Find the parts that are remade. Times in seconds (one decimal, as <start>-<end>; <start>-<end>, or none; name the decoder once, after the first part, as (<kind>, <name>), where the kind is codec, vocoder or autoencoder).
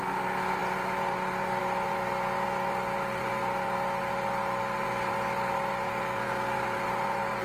none